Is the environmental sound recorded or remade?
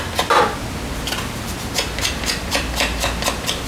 recorded